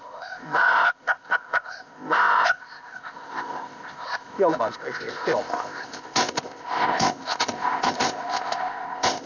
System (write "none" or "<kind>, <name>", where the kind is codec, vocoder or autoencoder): codec, ZipCodec